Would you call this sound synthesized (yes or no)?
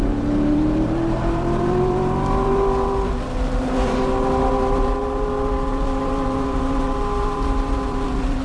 yes